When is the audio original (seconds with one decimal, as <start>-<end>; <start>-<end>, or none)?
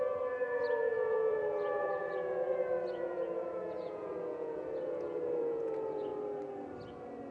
6.1-7.3